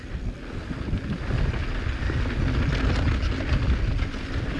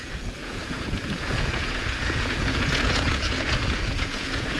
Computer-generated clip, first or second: second